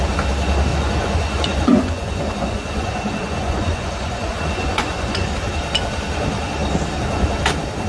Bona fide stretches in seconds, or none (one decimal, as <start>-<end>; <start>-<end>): 0.0-0.7; 5.3-7.9